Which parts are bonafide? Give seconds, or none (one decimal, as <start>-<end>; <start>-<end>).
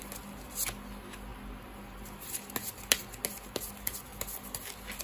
0.0-5.0